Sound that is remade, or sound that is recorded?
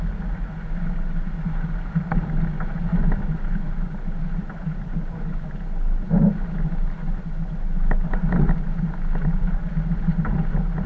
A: recorded